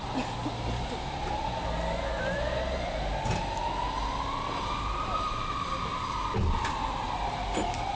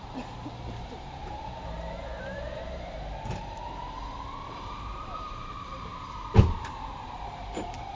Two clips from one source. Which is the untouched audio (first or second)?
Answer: first